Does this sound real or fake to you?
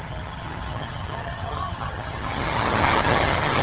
fake